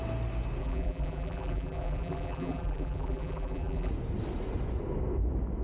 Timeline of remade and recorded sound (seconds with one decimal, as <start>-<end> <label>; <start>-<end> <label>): 0.0-0.6 recorded; 0.6-3.9 remade; 3.9-5.6 recorded